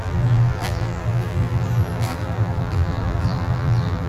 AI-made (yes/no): yes